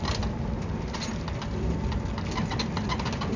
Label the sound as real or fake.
real